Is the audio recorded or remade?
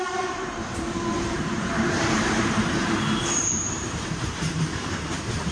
remade